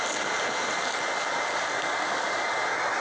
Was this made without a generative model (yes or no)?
yes